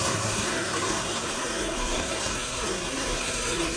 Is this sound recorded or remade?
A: remade